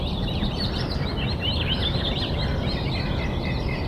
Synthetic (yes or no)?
no